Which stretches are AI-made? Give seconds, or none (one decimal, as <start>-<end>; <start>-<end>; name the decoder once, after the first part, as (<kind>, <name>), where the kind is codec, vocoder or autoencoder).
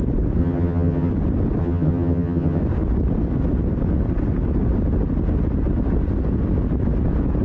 0.4-1.1 (vocoder, HiFi-GAN); 1.6-2.6